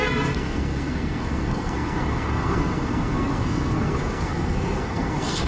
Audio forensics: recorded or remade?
remade